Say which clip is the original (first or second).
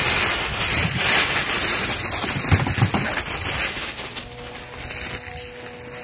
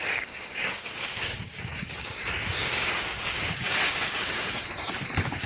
first